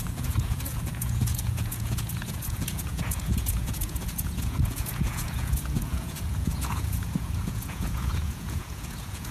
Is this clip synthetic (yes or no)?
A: yes